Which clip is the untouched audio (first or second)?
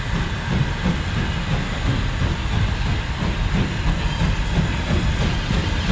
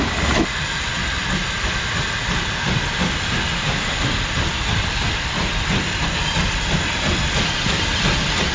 first